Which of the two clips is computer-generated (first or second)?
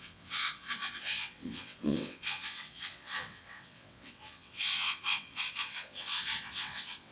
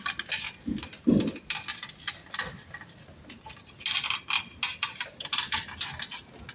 first